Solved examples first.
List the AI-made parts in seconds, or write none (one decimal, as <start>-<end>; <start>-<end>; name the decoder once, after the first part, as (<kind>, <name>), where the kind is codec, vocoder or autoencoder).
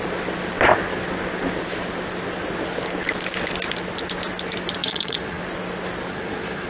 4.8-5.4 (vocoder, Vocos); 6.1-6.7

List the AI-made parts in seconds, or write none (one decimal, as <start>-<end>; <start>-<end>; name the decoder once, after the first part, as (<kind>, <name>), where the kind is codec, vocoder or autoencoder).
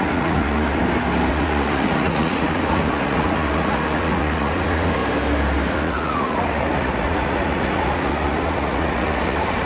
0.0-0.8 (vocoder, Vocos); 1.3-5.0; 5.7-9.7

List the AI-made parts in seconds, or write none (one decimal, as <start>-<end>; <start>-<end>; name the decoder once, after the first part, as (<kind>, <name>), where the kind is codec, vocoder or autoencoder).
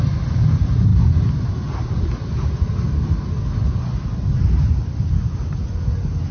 none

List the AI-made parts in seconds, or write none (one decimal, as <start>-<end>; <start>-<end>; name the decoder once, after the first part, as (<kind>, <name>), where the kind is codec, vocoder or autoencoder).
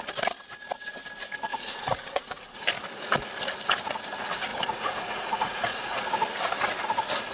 1.5-2.6 (vocoder, Vocos); 4.5-6.0